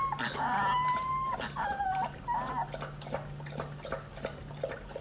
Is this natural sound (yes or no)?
yes